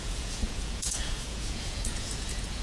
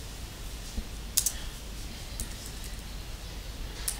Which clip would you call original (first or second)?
second